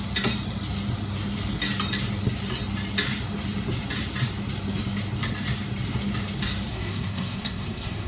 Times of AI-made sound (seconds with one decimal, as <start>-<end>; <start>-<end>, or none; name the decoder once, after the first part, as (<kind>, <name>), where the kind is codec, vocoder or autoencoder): 6.7-8.1 (codec, SNAC)